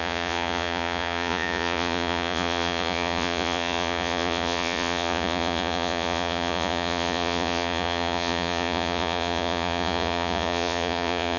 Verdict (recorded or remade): remade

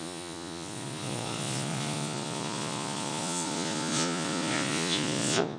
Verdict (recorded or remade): remade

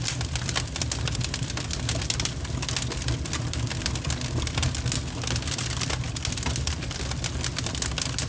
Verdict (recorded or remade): recorded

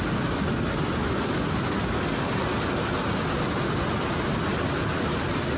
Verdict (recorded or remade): recorded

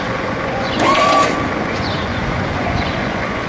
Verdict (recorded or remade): remade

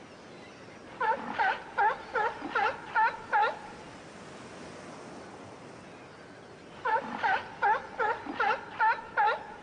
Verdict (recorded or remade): recorded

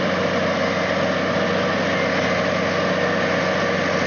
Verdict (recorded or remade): recorded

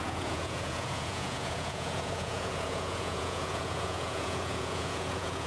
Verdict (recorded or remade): remade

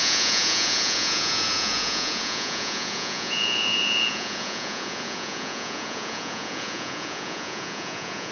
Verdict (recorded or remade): remade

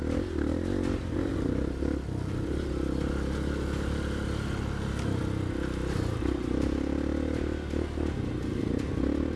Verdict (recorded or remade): recorded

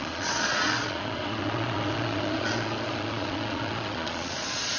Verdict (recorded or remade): remade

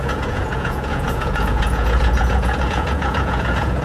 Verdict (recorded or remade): remade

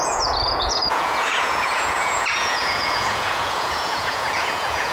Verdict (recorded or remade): remade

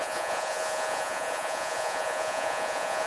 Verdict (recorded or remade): remade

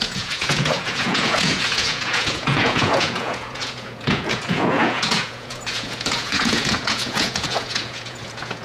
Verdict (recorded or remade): remade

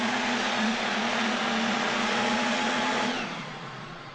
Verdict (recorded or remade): remade